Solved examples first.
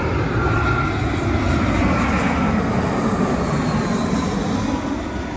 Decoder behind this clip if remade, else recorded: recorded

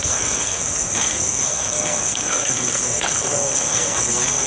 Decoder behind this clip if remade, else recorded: remade, codec, SNAC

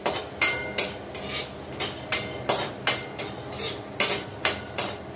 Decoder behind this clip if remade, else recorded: recorded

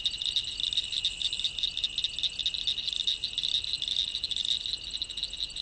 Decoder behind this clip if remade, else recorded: recorded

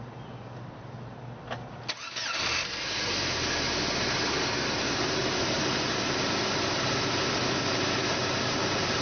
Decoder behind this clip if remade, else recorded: recorded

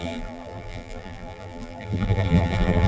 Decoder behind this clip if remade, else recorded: remade, vocoder, BigVGAN v2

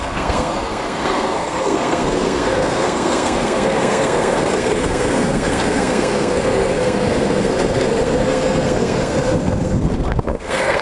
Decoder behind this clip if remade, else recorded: remade, codec, SNAC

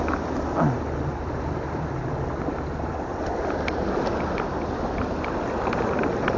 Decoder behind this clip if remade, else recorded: recorded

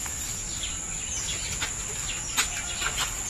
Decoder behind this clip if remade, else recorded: recorded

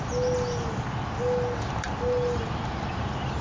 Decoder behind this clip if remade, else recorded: recorded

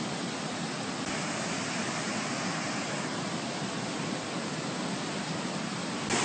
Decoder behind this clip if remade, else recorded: recorded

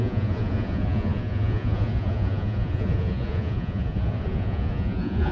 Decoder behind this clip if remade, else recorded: remade, vocoder, Vocos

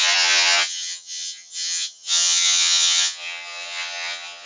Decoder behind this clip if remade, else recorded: remade, vocoder, HiFi-GAN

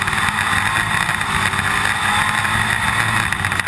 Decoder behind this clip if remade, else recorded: recorded